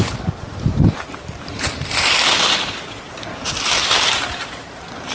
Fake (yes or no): yes